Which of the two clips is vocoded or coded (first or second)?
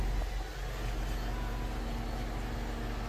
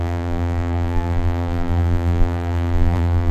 second